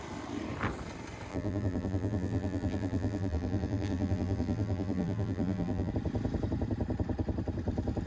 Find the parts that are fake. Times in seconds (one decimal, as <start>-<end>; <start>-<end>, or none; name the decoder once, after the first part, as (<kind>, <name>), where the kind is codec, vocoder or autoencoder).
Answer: 1.3-5.9 (vocoder, BigVGAN v2)